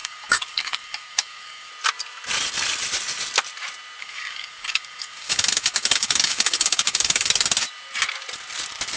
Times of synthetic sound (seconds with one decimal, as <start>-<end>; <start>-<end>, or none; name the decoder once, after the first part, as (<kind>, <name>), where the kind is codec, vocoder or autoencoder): 0.0-1.7 (codec, DAC); 4.0-7.3